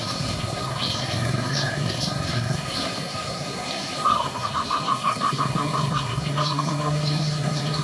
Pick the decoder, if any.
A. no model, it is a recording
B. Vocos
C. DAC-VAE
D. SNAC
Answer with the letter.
D